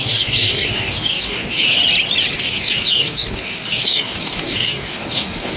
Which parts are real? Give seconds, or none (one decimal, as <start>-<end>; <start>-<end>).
1.8-2.4